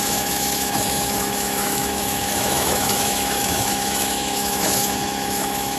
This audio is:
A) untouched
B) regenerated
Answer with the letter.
B